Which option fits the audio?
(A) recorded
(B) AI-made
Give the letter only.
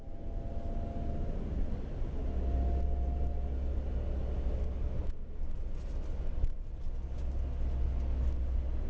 A